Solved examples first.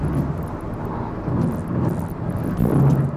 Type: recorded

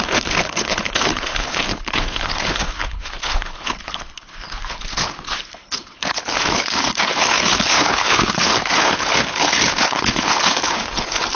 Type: remade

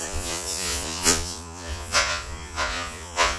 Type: remade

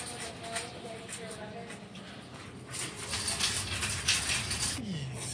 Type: recorded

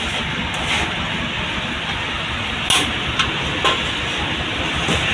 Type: recorded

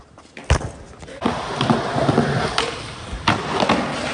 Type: recorded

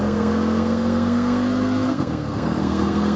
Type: remade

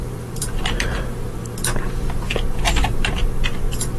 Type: remade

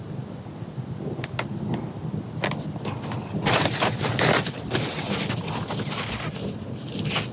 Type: recorded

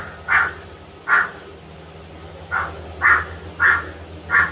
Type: recorded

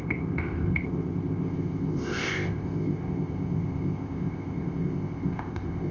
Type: remade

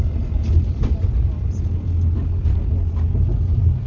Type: recorded